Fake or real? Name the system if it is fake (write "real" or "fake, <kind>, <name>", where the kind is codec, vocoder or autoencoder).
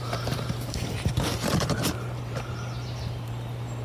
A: fake, vocoder, BigVGAN v2